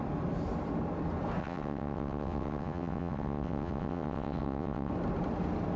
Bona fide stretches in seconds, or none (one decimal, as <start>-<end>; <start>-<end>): 0.0-1.4; 4.9-5.8